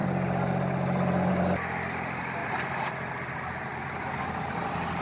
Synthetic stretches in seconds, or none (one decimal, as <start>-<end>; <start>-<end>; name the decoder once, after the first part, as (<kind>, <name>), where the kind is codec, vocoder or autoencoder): none